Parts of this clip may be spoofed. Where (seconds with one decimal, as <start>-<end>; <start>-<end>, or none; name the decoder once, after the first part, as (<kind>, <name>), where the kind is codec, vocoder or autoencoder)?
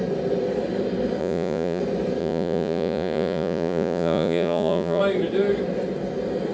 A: 1.2-1.8 (vocoder, Vocos); 2.2-5.0